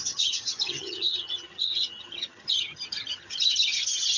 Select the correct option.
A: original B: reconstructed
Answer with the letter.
B